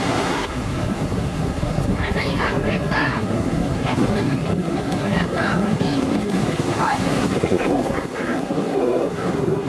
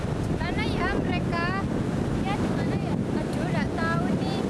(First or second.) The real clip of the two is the second